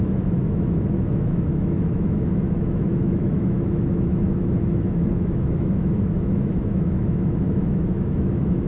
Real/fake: fake